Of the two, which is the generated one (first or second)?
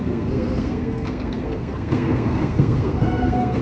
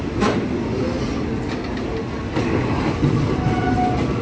first